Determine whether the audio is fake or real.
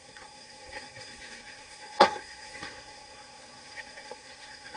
fake